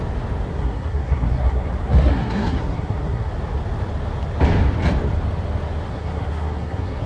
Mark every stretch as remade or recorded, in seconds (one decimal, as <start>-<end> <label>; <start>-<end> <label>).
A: 0.0-0.5 recorded; 0.5-3.3 remade; 3.3-5.9 recorded; 5.9-7.1 remade